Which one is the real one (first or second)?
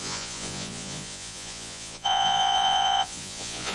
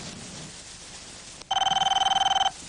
second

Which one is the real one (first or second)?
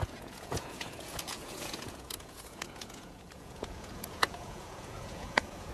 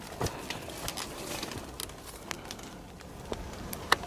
second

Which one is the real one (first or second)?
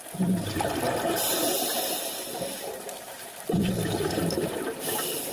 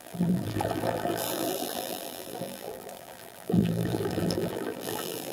first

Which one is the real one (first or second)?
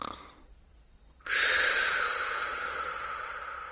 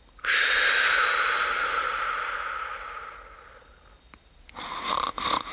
second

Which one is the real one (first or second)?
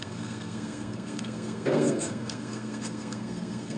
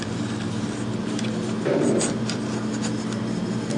second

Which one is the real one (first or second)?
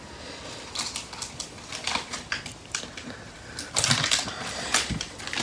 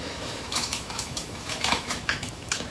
first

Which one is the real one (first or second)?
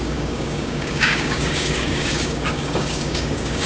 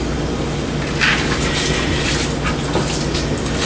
second